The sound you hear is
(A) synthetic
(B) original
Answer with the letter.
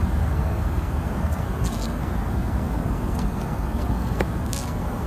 A